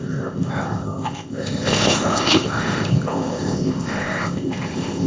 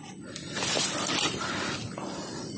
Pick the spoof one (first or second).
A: first